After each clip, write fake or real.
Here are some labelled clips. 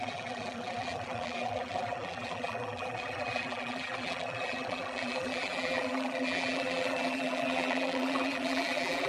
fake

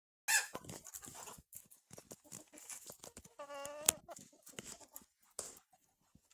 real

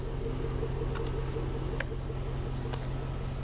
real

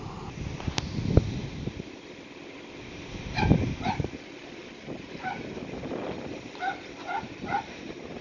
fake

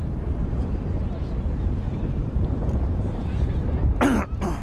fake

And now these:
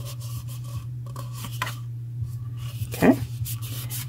fake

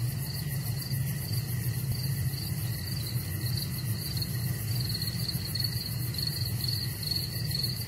real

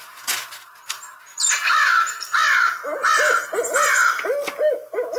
real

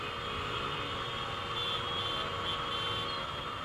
real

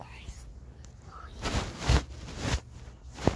real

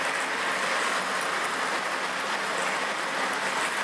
real